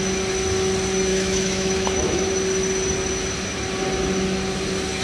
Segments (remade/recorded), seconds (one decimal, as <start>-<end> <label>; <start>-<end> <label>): 0.0-1.1 recorded; 1.1-2.3 remade; 2.3-5.0 recorded